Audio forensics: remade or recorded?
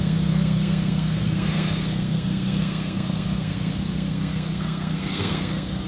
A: remade